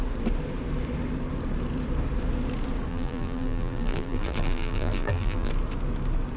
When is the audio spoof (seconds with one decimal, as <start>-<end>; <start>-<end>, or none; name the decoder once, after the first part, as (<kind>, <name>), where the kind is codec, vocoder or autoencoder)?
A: 2.9-5.5 (vocoder, BigVGAN v2)